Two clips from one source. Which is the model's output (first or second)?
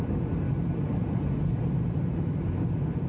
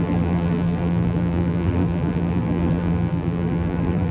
second